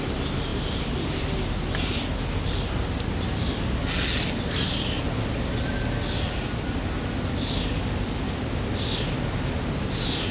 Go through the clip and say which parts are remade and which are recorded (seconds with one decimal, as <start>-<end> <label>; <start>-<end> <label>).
0.0-10.3 recorded